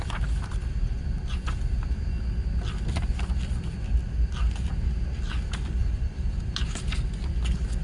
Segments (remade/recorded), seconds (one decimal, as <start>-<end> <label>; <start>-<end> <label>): 0.0-7.8 recorded